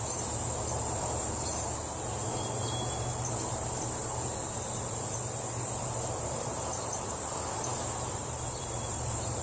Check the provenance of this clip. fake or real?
fake